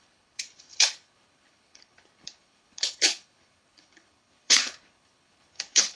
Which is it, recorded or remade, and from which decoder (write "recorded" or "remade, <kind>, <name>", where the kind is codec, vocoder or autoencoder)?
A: remade, codec, HILCodec